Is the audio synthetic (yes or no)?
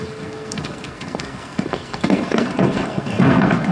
yes